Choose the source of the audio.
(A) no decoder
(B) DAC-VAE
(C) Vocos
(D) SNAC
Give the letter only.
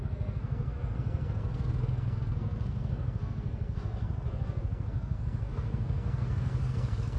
D